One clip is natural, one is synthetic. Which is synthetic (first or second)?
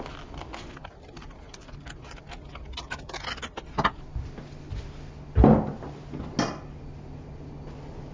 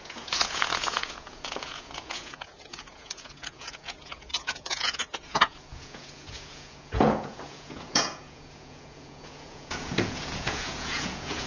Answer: second